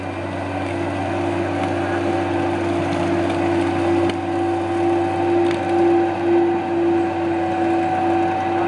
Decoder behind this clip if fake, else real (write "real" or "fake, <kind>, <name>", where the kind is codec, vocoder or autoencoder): real